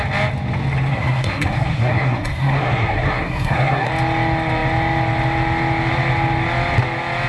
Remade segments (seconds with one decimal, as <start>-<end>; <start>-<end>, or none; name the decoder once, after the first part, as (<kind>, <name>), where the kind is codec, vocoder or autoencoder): 0.9-3.9 (codec, SNAC)